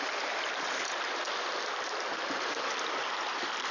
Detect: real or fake fake